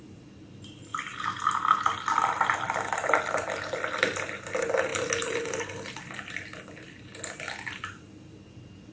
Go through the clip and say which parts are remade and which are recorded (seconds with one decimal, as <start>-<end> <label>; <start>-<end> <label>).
0.0-8.9 recorded